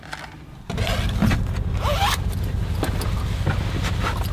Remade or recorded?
recorded